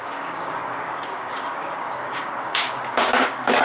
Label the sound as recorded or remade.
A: remade